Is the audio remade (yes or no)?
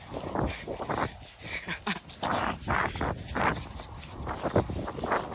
no